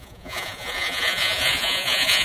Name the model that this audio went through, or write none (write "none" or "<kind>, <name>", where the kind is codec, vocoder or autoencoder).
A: vocoder, Vocos